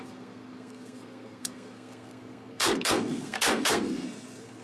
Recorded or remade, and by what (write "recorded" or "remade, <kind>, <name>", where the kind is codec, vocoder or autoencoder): remade, codec, SNAC